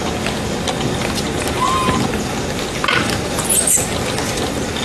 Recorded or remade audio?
recorded